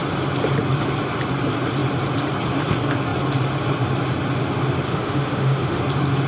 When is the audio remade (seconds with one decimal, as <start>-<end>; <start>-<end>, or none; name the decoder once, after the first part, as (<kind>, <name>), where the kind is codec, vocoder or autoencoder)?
4.9-5.8 (autoencoder, DAC-VAE)